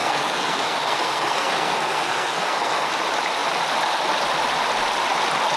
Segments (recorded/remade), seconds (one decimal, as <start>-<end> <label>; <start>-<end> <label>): 0.0-2.9 remade; 2.9-5.6 recorded